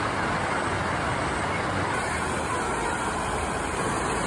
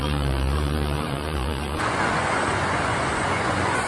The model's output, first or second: second